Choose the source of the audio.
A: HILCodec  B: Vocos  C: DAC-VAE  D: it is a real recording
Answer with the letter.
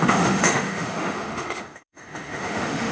C